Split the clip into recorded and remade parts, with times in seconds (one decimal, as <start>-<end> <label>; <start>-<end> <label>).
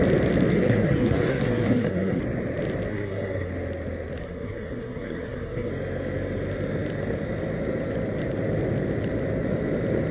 0.0-0.5 recorded; 0.5-2.2 remade; 2.2-2.9 recorded; 2.9-3.5 remade; 3.5-4.2 recorded; 4.2-5.7 remade; 5.7-10.1 recorded